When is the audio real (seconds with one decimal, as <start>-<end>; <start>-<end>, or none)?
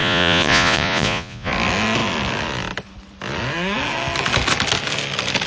1.5-5.5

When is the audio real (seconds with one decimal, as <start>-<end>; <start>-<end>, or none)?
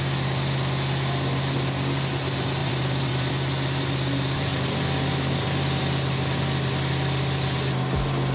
0.0-2.6; 3.3-4.5; 5.8-8.3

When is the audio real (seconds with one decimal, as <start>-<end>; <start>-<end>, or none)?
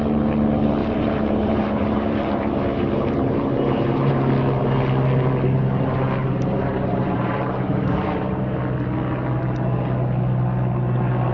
0.0-0.8; 4.2-6.2; 8.6-11.3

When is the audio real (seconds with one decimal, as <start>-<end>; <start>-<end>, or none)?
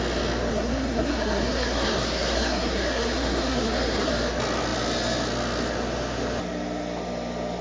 0.0-0.5; 4.1-7.6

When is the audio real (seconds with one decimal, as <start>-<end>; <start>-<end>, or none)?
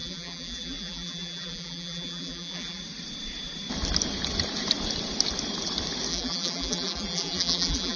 2.8-6.1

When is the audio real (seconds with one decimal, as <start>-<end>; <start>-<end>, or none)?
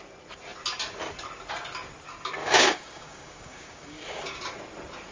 0.0-2.4; 4.4-5.1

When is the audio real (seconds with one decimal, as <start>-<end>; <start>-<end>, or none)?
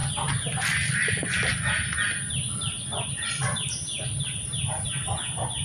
1.2-3.1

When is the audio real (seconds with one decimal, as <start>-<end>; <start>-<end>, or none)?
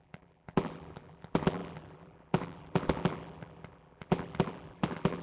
none